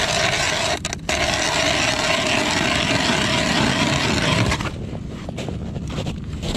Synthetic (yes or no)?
no